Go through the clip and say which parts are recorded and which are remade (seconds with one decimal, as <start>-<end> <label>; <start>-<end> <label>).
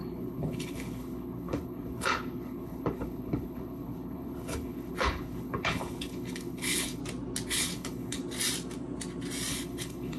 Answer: 0.0-7.0 remade; 7.0-7.5 recorded; 7.5-8.2 remade; 8.2-9.5 recorded; 9.5-10.2 remade